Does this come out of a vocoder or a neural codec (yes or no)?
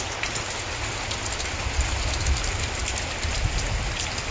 yes